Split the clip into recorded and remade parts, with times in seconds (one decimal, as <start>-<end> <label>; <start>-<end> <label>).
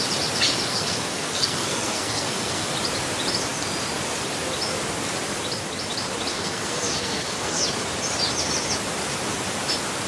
0.0-0.7 recorded; 0.7-2.7 remade; 2.7-6.3 recorded; 6.3-7.6 remade; 7.6-10.1 recorded